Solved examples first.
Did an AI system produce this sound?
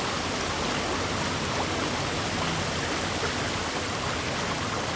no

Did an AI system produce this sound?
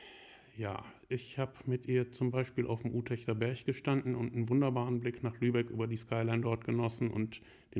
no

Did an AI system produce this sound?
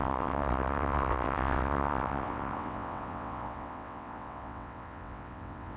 yes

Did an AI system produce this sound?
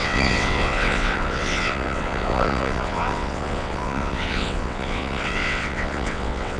yes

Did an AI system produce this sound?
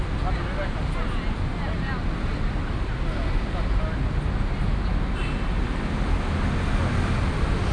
no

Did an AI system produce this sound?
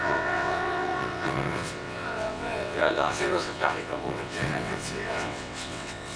yes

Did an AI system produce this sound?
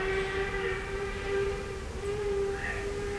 no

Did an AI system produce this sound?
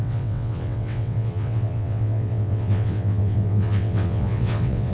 yes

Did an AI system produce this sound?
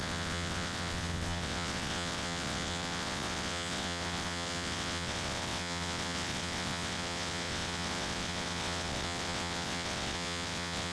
yes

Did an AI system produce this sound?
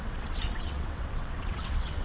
yes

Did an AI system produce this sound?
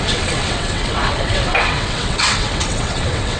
yes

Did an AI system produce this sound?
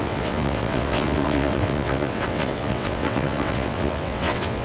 yes